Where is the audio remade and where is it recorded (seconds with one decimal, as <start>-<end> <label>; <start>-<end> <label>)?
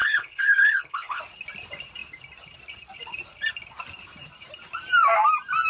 0.0-1.2 remade; 1.2-5.7 recorded